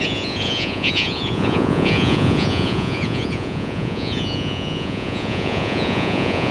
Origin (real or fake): fake